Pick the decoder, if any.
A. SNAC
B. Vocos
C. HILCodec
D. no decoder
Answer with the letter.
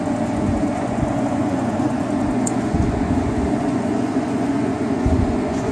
B